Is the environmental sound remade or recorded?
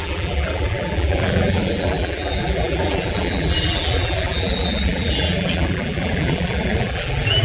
remade